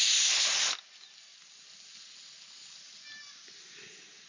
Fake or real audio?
real